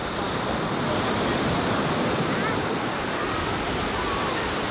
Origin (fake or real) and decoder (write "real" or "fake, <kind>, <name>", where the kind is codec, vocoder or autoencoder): real